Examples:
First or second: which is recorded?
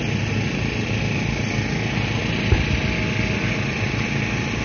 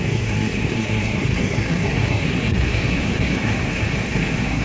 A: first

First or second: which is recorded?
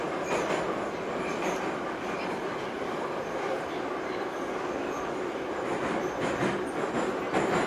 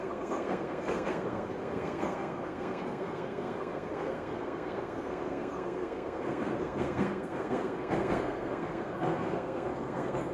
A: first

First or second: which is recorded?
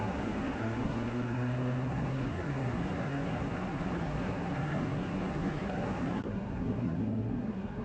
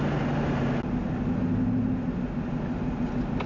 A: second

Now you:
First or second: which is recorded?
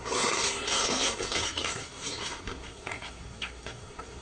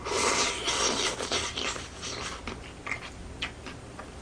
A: second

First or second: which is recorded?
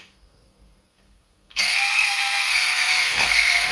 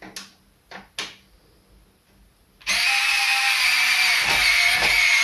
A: second